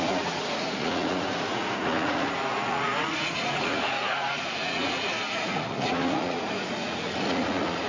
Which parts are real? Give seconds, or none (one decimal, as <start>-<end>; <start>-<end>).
none